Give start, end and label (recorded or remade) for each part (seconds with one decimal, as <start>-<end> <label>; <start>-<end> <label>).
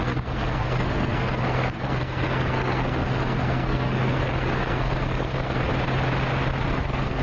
0.0-5.7 remade; 5.7-6.8 recorded; 6.8-7.2 remade